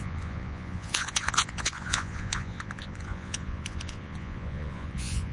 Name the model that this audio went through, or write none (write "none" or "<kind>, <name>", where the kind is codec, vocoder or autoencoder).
vocoder, Vocos